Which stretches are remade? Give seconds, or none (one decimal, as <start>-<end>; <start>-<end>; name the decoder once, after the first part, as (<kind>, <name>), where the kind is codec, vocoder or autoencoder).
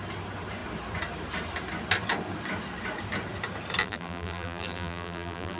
3.8-5.6 (vocoder, BigVGAN v2)